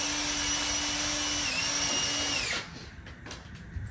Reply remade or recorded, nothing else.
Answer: recorded